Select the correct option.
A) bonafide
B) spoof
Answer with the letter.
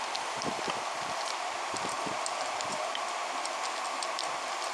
A